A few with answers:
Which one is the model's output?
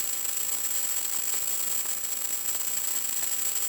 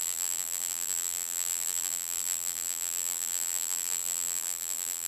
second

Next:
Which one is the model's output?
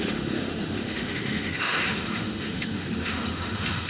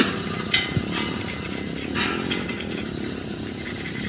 first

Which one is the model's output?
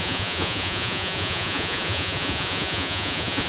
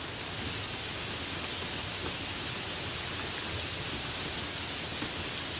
first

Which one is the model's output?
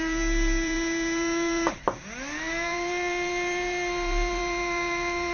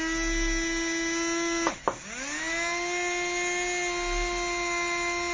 first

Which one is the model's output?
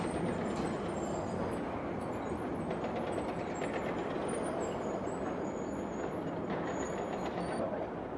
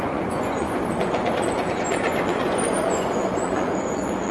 second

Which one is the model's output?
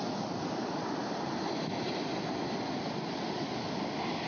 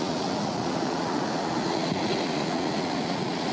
second